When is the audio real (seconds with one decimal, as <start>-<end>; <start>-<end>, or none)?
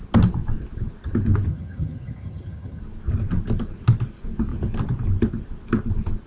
0.0-1.5; 2.8-6.3